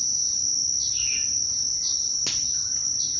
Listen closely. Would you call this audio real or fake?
real